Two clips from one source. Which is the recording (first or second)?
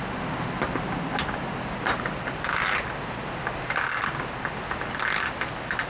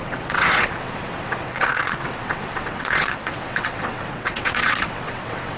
first